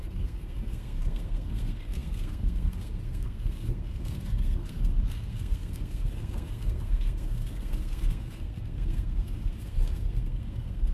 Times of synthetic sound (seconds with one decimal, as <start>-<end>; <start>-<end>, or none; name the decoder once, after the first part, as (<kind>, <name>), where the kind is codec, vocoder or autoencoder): 0.0-10.9 (codec, SNAC)